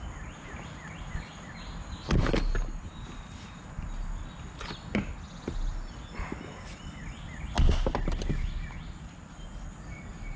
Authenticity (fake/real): real